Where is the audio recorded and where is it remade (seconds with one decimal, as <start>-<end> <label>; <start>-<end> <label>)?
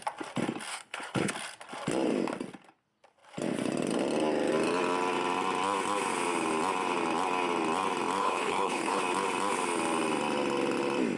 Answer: 0.0-0.7 recorded; 0.7-1.3 remade; 1.3-8.2 recorded; 8.2-9.0 remade; 9.0-11.2 recorded